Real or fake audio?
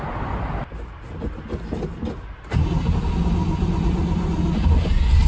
real